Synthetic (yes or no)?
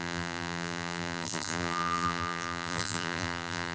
yes